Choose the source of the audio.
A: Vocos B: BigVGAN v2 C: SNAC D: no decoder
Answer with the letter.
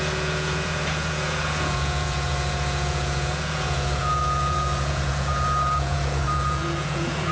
A